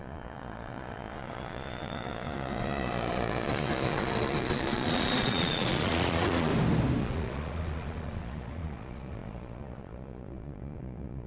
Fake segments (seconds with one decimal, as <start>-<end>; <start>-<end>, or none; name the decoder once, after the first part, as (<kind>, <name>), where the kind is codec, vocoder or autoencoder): 0.0-6.5 (vocoder, Vocos); 7.0-11.3

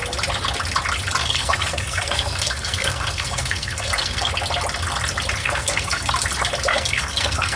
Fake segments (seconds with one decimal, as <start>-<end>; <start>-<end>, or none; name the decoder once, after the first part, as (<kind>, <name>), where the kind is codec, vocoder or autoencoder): 1.2-4.3 (codec, SNAC); 5.4-6.1; 6.7-7.6

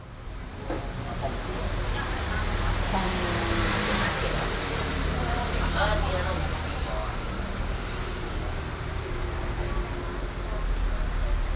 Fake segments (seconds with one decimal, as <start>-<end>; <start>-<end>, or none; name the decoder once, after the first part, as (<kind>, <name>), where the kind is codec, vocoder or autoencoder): none

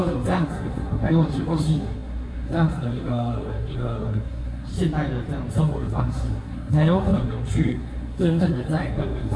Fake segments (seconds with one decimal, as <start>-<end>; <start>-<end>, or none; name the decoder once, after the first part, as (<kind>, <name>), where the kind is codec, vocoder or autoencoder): 0.0-4.7 (codec, SNAC); 5.5-9.4

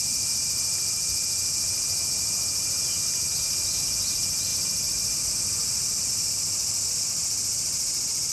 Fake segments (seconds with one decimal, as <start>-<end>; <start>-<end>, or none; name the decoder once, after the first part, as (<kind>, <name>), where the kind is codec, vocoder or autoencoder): none